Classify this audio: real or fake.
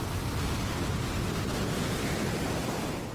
real